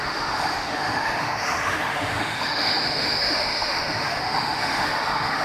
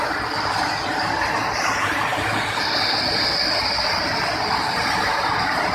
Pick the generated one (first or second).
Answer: first